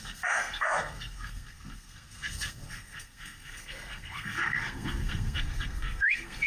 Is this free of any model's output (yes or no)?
no